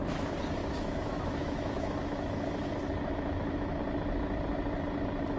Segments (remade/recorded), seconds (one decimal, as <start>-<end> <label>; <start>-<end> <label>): 0.0-0.6 recorded; 0.6-3.8 remade; 3.8-5.4 recorded